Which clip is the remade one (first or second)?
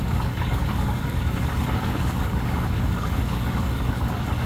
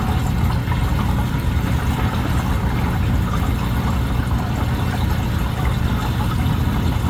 first